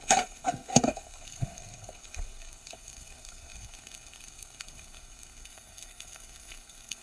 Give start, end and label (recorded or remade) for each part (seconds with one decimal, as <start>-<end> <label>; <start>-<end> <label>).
0.0-7.0 remade